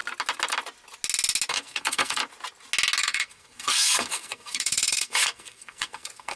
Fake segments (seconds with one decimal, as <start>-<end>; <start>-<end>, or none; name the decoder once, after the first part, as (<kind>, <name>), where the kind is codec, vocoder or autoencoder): 1.5-2.2 (codec, SNAC); 3.0-6.4